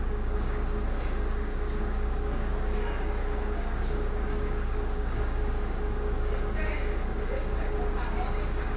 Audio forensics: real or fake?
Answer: fake